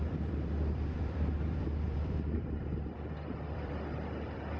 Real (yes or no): no